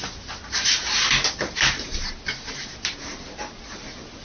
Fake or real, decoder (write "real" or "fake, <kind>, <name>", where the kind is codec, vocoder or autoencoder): real